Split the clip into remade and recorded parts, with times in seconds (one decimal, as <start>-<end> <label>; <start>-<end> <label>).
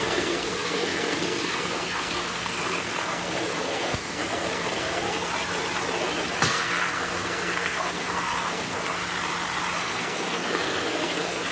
0.0-5.3 remade; 5.3-6.4 recorded; 6.4-9.0 remade; 9.0-9.8 recorded; 9.8-11.5 remade